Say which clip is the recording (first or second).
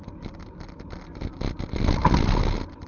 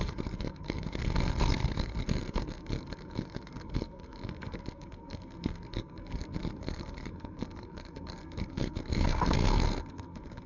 first